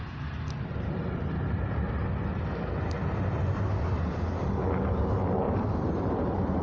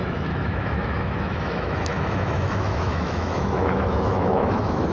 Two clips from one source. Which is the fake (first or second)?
second